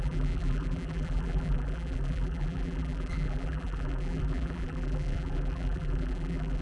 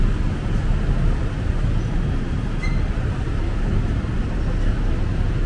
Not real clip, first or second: first